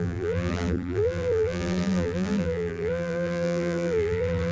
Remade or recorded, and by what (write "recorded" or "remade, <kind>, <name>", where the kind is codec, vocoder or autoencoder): remade, vocoder, BigVGAN v2